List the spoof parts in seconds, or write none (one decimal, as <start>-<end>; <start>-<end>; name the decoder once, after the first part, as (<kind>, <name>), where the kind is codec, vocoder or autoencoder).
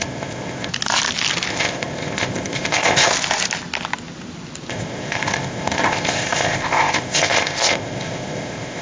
0.0-0.7 (codec, ZipCodec); 1.5-3.1; 4.7-8.8